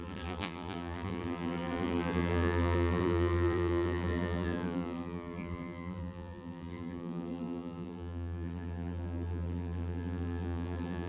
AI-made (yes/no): yes